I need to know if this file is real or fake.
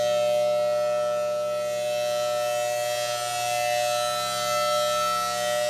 real